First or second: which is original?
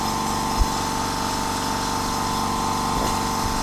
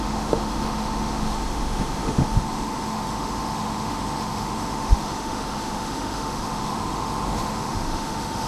first